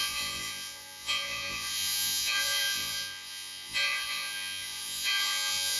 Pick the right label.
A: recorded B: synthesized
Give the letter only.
B